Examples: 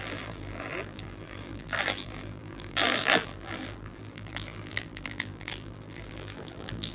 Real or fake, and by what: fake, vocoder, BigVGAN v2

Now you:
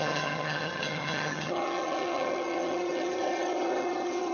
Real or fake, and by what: fake, vocoder, HiFi-GAN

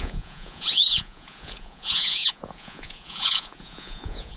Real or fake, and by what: fake, vocoder, Vocos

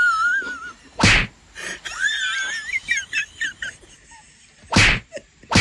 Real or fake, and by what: real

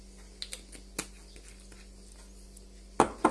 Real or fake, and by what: real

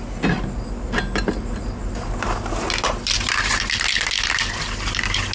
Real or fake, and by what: real